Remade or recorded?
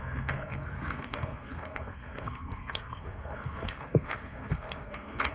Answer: remade